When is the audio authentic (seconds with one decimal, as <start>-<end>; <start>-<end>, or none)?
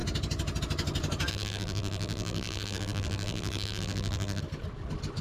0.0-1.3; 4.4-5.2